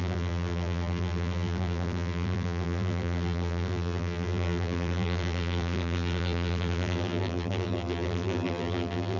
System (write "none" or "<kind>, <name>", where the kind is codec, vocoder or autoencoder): vocoder, BigVGAN v2